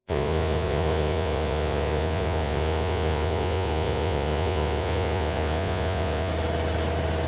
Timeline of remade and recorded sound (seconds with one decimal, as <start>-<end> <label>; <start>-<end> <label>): 0.0-6.3 remade; 6.3-7.3 recorded

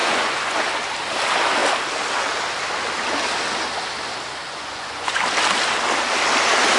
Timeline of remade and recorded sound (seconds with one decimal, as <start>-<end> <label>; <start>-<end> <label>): 0.0-0.6 remade; 0.6-4.4 recorded; 4.4-5.2 remade; 5.2-6.8 recorded